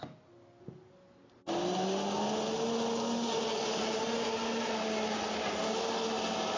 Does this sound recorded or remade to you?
recorded